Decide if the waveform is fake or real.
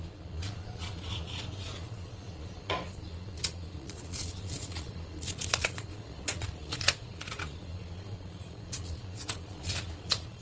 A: fake